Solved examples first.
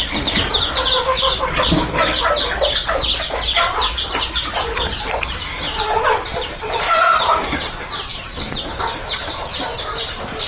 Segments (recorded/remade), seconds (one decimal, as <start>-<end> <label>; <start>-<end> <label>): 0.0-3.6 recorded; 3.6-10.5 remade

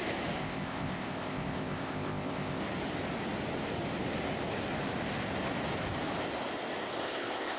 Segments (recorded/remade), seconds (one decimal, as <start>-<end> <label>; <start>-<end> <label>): 0.0-0.4 recorded; 0.4-2.6 remade; 2.6-7.0 recorded; 7.0-7.6 remade

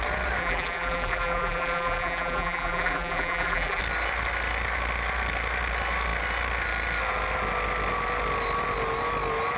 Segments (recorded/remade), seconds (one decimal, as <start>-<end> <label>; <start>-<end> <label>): 0.0-0.4 recorded; 0.4-3.8 remade; 3.8-9.6 recorded